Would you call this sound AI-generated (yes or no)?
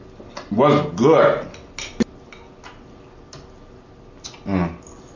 no